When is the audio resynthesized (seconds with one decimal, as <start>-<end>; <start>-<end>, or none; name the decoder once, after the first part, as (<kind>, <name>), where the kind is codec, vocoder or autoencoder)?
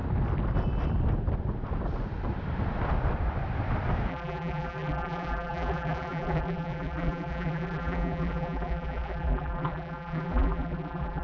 4.1-11.2 (vocoder, BigVGAN v2)